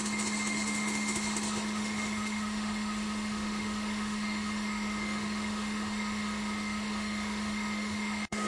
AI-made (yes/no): yes